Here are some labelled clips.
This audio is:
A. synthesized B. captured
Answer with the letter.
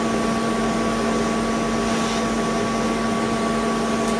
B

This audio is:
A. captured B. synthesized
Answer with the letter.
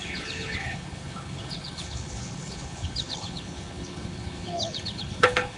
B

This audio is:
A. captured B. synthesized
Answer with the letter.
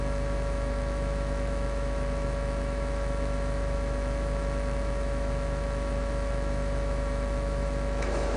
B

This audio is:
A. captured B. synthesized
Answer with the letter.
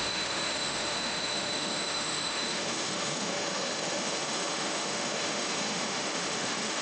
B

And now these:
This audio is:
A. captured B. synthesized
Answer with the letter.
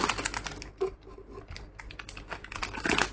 A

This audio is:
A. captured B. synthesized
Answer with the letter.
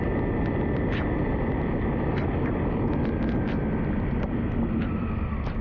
A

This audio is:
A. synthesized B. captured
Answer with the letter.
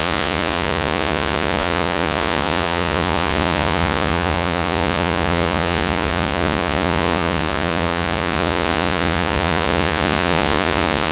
A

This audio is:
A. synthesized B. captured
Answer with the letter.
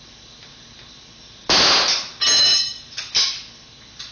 B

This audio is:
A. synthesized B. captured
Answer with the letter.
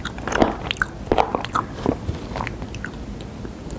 B